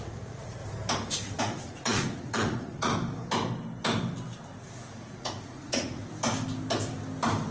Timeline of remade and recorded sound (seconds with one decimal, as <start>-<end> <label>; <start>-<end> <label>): 0.0-0.6 remade; 0.6-1.4 recorded; 1.4-2.9 remade; 2.9-5.0 recorded; 5.0-6.0 remade; 6.0-7.5 recorded